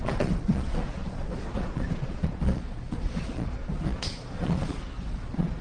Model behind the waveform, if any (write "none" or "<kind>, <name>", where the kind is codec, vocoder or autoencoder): vocoder, Vocos